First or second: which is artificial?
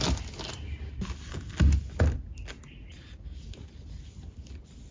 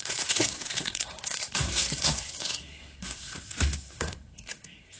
second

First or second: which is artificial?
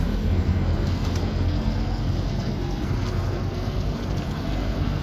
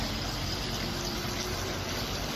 first